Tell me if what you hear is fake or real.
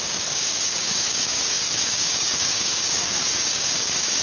fake